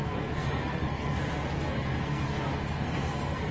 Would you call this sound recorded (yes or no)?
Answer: no